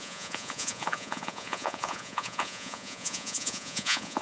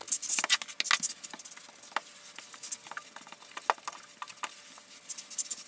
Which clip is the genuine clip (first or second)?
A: second